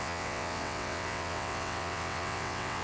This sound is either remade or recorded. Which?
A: remade